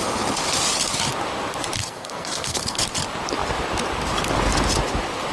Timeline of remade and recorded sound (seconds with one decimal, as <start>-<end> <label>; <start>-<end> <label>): 0.0-1.8 recorded; 1.8-2.8 remade; 2.8-5.3 recorded